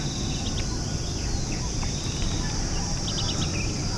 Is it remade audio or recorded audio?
recorded